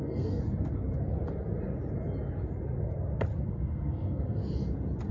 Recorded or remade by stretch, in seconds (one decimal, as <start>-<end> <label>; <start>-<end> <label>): 0.0-0.4 remade; 0.4-3.5 recorded; 3.5-4.4 remade; 4.4-5.1 recorded

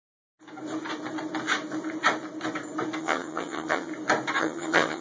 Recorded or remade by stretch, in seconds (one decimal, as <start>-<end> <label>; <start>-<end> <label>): 0.0-3.0 recorded; 3.0-3.9 remade; 3.9-4.4 recorded; 4.4-5.0 remade

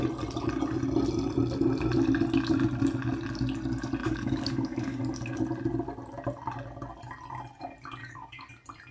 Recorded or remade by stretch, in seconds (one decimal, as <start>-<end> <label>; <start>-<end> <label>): 0.0-4.0 recorded; 4.0-5.0 remade; 5.0-8.0 recorded; 8.0-8.5 remade; 8.5-8.9 recorded

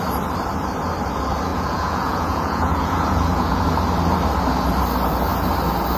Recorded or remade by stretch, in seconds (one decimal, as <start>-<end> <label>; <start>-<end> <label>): 0.0-1.5 recorded; 1.5-3.6 remade; 3.6-6.0 recorded

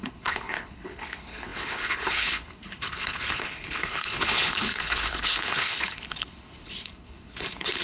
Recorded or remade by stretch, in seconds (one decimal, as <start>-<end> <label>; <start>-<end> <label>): 0.0-7.8 remade